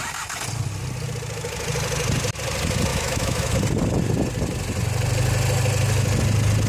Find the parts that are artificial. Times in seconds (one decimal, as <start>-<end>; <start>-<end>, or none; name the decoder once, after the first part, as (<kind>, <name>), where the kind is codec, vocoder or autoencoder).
2.9-3.5 (autoencoder, DAC-VAE)